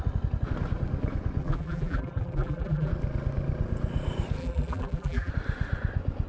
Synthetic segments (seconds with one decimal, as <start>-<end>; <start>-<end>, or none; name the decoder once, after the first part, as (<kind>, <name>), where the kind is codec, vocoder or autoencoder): 1.4-2.9 (vocoder, BigVGAN v2); 4.4-5.3